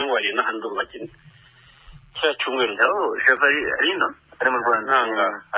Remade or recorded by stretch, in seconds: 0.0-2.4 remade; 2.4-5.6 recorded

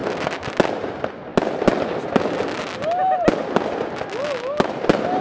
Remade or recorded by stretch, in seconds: 0.0-5.2 recorded

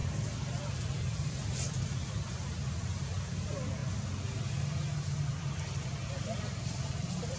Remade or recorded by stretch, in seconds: 0.0-7.4 recorded

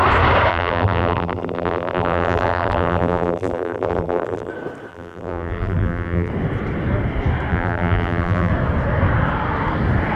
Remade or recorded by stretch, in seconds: 0.0-0.5 recorded; 0.5-4.5 remade; 4.5-4.9 recorded; 4.9-6.3 remade; 6.3-7.5 recorded; 7.5-8.5 remade; 8.5-10.2 recorded